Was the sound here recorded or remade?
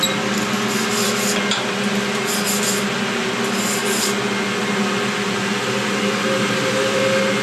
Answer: recorded